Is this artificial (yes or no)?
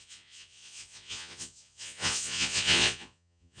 yes